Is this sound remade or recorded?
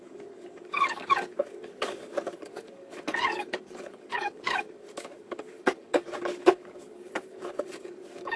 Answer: remade